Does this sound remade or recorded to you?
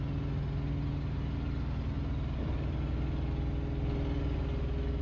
recorded